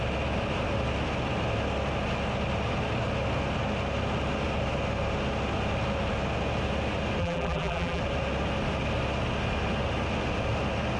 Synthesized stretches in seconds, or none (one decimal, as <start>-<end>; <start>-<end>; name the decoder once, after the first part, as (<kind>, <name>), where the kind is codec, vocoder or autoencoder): 7.2-8.0 (vocoder, BigVGAN v2)